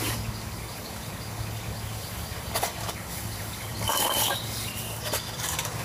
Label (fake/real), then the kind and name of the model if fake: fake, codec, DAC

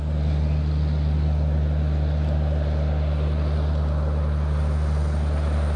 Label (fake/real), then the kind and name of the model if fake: real